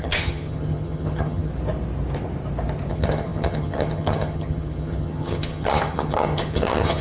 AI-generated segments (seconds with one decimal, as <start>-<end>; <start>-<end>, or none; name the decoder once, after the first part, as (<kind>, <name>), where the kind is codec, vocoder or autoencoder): 0.0-1.5 (vocoder, HiFi-GAN); 2.9-7.0